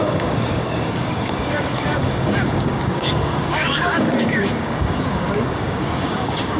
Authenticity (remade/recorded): remade